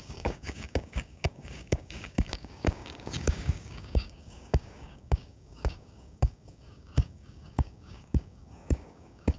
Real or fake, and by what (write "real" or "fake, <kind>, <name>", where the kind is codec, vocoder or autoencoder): fake, codec, DAC